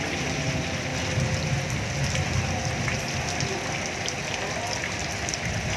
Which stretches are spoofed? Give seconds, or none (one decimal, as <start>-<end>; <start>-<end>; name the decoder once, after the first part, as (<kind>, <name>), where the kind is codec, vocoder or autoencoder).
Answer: none